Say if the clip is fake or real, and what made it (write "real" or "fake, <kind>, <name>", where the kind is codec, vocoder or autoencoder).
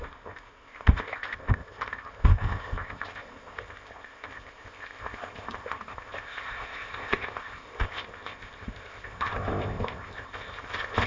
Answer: fake, codec, ZipCodec